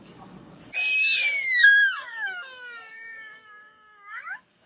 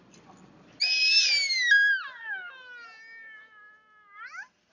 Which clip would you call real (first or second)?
second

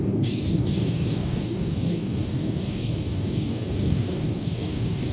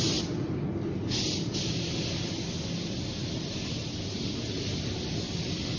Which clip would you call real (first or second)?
second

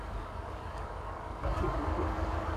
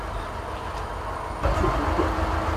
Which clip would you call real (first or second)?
second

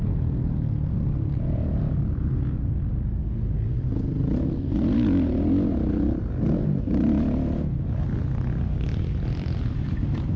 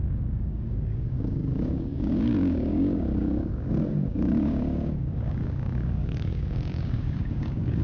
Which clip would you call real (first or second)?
first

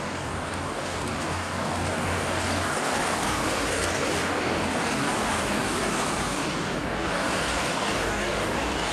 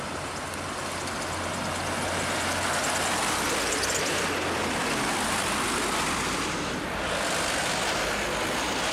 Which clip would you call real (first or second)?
second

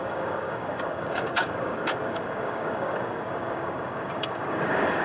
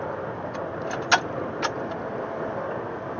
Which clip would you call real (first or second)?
second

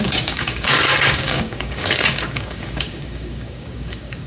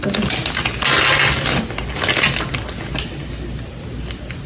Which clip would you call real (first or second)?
second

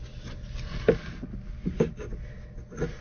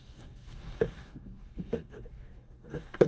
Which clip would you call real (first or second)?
first